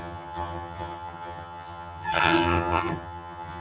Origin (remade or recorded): remade